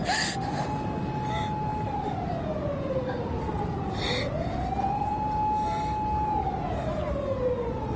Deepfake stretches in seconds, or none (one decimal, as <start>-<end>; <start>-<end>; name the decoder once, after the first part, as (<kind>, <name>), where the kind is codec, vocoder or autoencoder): none